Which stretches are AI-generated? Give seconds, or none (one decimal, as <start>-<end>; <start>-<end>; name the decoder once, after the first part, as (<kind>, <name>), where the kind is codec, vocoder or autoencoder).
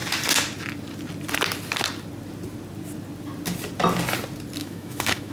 4.6-5.3 (autoencoder, DAC-VAE)